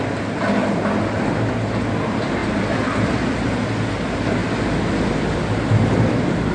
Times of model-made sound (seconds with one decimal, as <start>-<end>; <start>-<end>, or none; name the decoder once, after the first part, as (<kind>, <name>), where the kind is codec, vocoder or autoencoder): 2.4-3.4 (vocoder, BigVGAN v2); 4.4-6.5